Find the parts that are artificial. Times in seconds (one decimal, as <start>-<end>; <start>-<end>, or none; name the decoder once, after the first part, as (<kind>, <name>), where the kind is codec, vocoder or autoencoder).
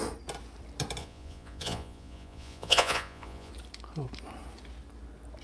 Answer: 1.0-3.5 (vocoder, Vocos)